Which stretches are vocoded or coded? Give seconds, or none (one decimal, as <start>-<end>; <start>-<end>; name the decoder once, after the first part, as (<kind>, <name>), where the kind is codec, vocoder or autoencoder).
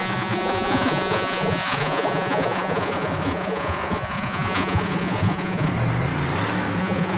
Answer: 0.0-5.7 (vocoder, Vocos); 6.8-7.2